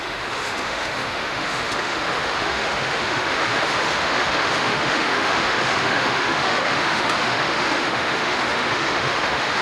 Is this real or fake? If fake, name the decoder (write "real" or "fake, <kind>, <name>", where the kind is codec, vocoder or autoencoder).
fake, autoencoder, DAC-VAE